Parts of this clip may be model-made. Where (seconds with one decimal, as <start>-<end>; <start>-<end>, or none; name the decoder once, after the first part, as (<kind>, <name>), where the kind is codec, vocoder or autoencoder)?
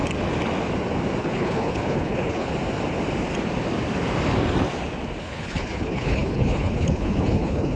1.2-2.5 (codec, HILCodec); 5.2-7.8